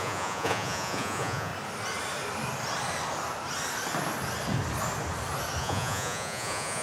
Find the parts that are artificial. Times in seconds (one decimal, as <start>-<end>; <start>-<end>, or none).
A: 0.0-1.5; 5.6-6.8